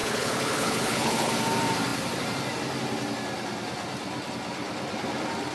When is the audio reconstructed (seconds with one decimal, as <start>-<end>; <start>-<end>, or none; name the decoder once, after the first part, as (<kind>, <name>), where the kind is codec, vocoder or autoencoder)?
0.0-1.3 (codec, HILCodec)